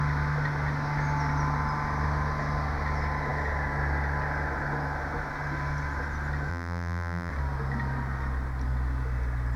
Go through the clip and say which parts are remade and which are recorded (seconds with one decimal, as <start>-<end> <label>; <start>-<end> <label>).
0.0-6.5 recorded; 6.5-7.3 remade; 7.3-9.6 recorded